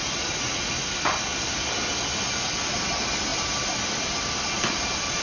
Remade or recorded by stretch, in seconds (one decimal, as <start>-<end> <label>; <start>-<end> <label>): 0.0-5.2 recorded